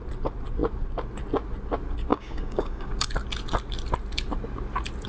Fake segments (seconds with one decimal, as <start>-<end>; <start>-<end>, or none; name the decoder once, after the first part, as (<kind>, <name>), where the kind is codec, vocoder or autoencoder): 2.1-2.9 (codec, DAC)